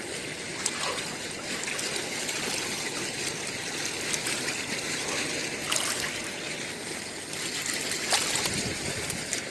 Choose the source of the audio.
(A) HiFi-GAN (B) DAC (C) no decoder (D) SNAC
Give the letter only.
C